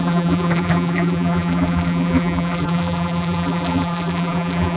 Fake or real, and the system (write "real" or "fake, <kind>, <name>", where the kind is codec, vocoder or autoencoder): fake, vocoder, BigVGAN v2